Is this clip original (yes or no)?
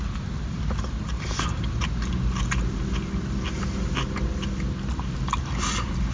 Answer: yes